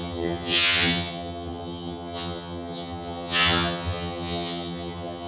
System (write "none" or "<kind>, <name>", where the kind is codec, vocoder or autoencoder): vocoder, HiFi-GAN